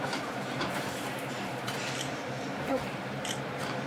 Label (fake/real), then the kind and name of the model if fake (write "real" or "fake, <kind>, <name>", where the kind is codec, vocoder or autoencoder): fake, vocoder, BigVGAN v2